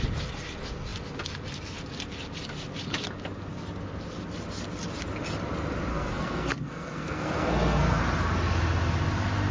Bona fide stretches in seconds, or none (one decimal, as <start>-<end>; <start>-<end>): 0.0-5.9; 8.0-9.5